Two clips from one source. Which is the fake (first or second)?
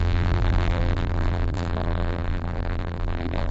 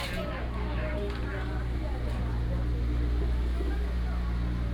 first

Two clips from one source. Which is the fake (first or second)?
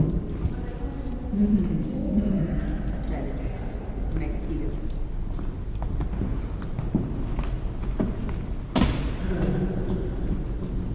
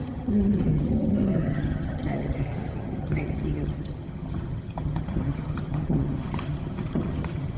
second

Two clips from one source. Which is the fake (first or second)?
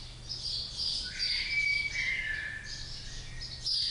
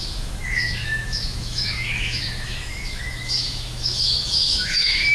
second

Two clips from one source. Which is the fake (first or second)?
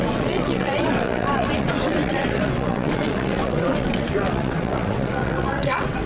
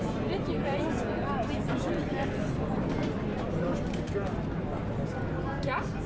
first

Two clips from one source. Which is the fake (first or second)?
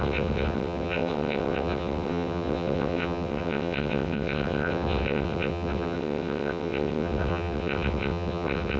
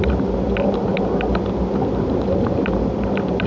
first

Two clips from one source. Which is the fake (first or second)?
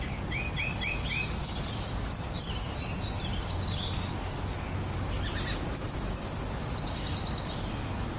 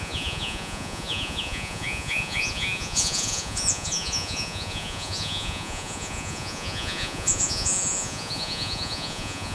second